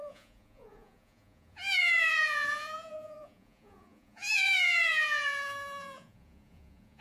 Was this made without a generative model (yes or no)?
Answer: no